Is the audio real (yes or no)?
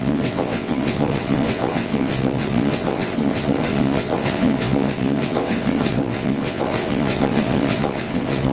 no